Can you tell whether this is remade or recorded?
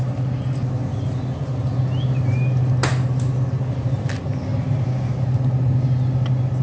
recorded